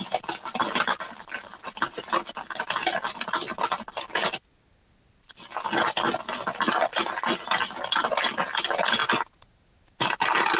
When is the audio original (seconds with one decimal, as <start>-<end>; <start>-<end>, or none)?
0.0-10.6

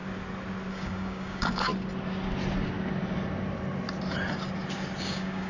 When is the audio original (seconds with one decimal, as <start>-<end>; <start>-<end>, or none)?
0.0-0.7; 1.7-5.0

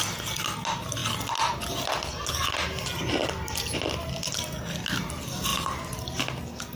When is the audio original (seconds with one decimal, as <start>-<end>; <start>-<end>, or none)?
0.0-6.8

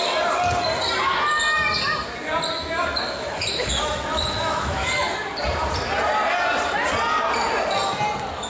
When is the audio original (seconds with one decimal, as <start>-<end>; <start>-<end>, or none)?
0.0-2.6; 5.1-8.5

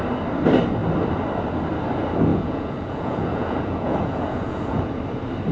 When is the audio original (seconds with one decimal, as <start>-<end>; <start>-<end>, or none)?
0.0-2.3; 5.0-5.5

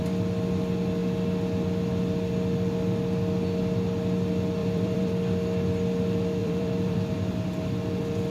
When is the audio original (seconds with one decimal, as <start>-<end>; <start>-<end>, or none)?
0.0-4.6; 5.1-6.4; 7.1-8.3